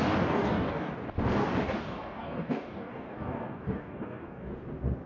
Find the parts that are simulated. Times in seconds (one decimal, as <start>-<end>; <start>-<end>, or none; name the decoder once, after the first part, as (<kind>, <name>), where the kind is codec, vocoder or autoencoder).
0.0-0.9 (codec, DAC); 1.4-4.5